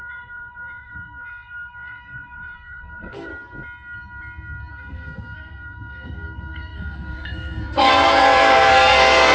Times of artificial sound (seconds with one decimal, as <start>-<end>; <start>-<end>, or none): 0.0-3.3; 4.7-9.3